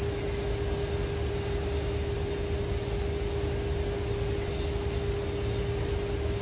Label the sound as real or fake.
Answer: real